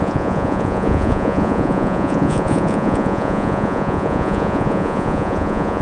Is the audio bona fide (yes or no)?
no